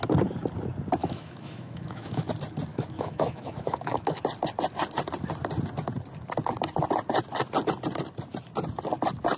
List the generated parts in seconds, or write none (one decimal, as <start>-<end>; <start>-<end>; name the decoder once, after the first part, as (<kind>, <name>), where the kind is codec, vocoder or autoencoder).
1.0-2.3 (autoencoder, DAC-VAE); 2.7-4.2